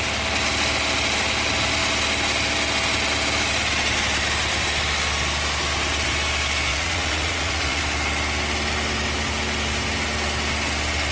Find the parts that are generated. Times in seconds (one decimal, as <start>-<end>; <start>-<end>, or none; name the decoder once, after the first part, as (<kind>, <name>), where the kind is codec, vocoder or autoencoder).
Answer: 6.7-7.8 (vocoder, Vocos)